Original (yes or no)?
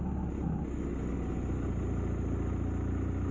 yes